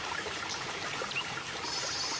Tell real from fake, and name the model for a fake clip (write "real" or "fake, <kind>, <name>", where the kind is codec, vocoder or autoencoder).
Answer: fake, vocoder, BigVGAN v2